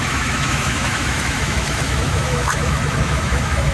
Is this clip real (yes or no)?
no